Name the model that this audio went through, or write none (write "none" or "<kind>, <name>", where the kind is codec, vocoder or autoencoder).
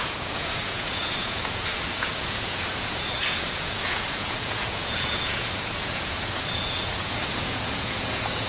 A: vocoder, Vocos